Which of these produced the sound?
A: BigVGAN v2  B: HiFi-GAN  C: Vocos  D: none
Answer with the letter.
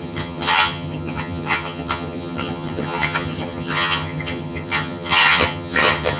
B